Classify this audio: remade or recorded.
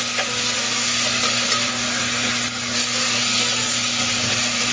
recorded